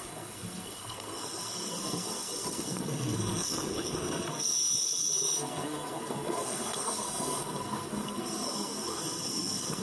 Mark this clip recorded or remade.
remade